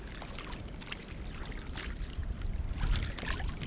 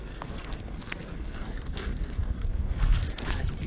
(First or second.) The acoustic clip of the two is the first